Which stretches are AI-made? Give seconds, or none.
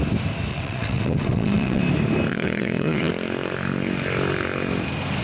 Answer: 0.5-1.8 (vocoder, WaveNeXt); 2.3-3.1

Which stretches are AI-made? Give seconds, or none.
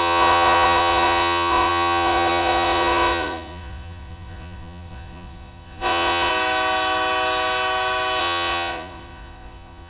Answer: 0.0-6.3 (vocoder, Vocos); 8.2-9.9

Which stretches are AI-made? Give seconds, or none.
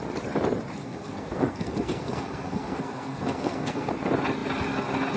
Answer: 0.8-3.9 (codec, SNAC)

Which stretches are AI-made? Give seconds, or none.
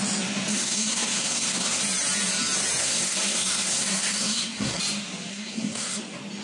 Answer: 0.5-1.8 (codec, SNAC); 2.8-4.8; 5.3-6.0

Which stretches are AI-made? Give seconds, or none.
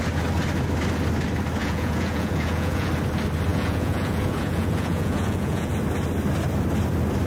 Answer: 1.6-2.9 (vocoder, Vocos); 3.5-5.7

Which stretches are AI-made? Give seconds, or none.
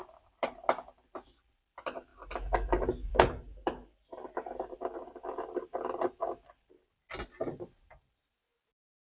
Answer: none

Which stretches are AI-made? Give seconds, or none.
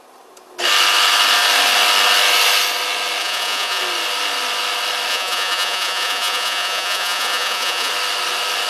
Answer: 3.2-3.8 (vocoder, Vocos); 5.1-7.9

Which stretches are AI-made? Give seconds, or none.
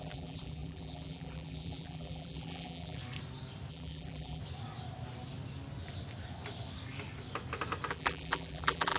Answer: 0.0-3.0 (vocoder, BigVGAN v2); 3.7-4.4; 7.9-9.0